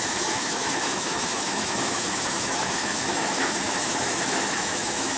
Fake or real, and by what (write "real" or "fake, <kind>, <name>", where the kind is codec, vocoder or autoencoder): fake, autoencoder, DAC-VAE